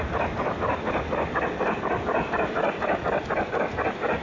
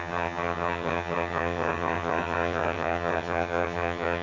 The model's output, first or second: second